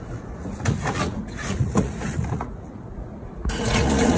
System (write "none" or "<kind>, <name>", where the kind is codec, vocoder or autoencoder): vocoder, Vocos